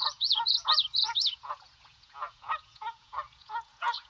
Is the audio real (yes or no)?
no